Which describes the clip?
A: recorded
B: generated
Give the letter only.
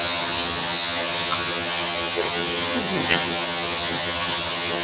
B